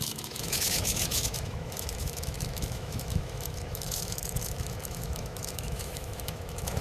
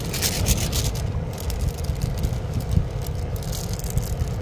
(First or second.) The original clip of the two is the second